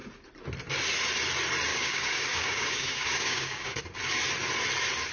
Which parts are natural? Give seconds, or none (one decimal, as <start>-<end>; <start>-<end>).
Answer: 0.0-1.7; 3.8-5.1